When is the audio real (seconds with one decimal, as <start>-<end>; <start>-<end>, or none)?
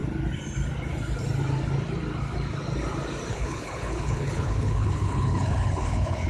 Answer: 0.0-3.3